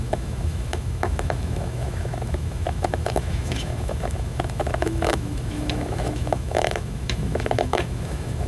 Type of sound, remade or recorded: remade